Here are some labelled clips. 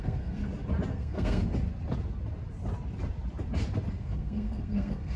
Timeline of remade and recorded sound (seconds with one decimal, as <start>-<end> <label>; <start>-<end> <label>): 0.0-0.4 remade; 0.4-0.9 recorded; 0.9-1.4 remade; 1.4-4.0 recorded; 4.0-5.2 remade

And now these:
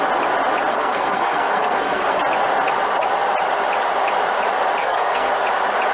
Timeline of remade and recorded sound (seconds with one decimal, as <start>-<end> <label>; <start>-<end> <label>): 0.0-0.7 recorded; 0.7-2.2 remade; 2.2-4.8 recorded; 4.8-5.3 remade; 5.3-5.9 recorded

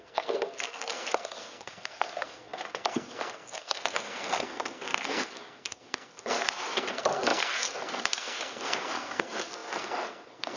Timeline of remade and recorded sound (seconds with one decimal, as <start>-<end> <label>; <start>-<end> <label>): 0.0-10.6 remade

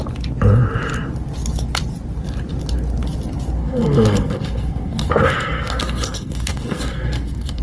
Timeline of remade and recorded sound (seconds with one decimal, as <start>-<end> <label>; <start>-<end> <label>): 0.0-3.6 recorded; 3.6-7.6 remade

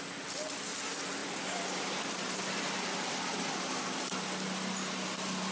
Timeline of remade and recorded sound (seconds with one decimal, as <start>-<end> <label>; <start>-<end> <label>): 0.0-5.5 recorded

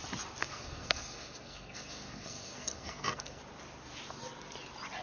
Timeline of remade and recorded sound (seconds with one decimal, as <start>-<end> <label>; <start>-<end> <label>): 0.0-0.4 recorded; 0.4-3.4 remade; 3.4-5.0 recorded